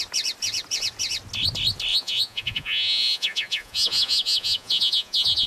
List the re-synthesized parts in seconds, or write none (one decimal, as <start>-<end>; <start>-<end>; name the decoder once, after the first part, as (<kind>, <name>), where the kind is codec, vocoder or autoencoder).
1.9-5.5 (vocoder, Vocos)